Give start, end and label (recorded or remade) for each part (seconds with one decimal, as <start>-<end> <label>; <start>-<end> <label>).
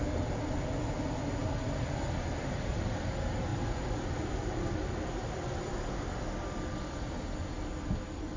0.0-8.4 recorded